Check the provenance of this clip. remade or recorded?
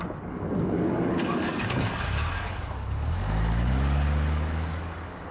remade